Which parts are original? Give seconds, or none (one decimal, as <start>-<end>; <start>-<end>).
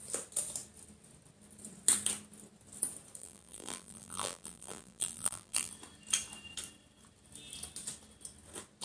0.0-3.2; 5.7-8.8